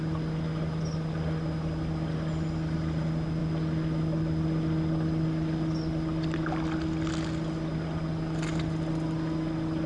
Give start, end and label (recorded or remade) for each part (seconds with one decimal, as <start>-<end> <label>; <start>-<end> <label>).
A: 0.0-9.9 recorded